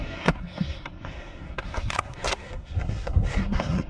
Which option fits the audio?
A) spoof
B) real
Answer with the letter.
A